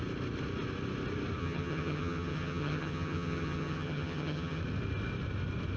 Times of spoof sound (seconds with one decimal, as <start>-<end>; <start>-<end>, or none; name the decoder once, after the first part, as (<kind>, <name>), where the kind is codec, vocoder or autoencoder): 1.4-4.6 (vocoder, HiFi-GAN)